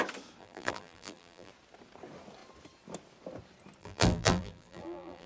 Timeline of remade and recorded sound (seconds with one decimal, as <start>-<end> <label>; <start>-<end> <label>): 0.0-0.4 recorded; 0.4-1.5 remade; 1.5-3.8 recorded; 3.8-5.3 remade